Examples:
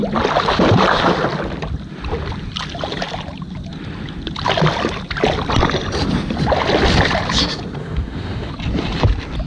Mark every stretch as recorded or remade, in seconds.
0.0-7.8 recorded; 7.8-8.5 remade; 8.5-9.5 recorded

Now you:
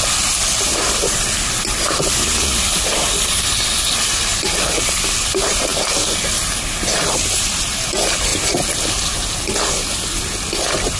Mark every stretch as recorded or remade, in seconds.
0.0-11.0 recorded

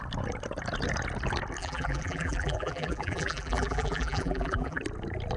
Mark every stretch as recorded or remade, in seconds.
0.0-1.6 recorded; 1.6-4.8 remade; 4.8-5.4 recorded

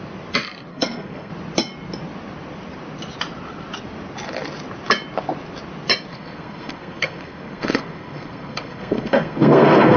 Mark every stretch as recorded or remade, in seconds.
0.0-0.7 recorded; 0.7-1.3 remade; 1.3-6.1 recorded; 6.1-10.0 remade